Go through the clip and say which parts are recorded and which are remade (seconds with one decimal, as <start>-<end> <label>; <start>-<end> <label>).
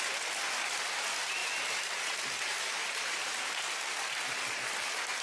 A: 0.0-1.4 recorded; 1.4-2.1 remade; 2.1-2.8 recorded; 2.8-3.9 remade; 3.9-5.2 recorded